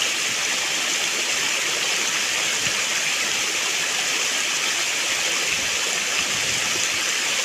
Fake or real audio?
real